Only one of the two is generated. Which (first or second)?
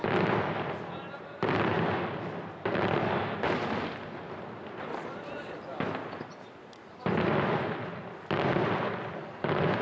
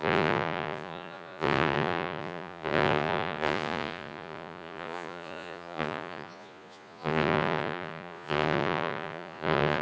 second